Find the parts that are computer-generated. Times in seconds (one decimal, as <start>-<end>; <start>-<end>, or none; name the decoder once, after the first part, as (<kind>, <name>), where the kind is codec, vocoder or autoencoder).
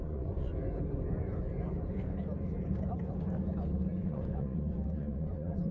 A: 0.0-0.5 (vocoder, Vocos); 3.9-5.7